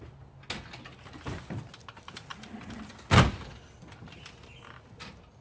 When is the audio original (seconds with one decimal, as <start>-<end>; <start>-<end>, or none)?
0.0-2.3; 4.5-5.4